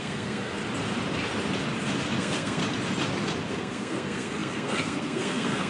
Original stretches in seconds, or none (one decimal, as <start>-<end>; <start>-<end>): 0.6-2.2; 2.6-3.5